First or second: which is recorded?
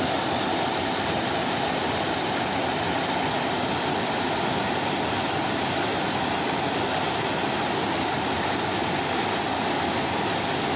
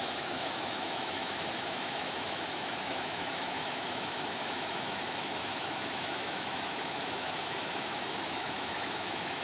first